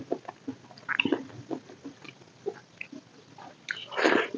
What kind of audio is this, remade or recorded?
recorded